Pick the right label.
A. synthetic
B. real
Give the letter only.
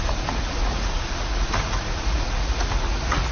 A